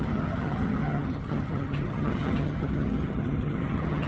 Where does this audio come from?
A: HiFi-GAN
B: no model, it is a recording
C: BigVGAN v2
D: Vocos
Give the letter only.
A